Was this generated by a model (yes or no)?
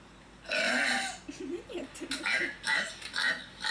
no